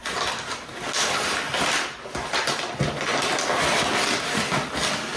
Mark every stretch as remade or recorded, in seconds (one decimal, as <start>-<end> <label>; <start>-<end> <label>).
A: 0.0-5.2 recorded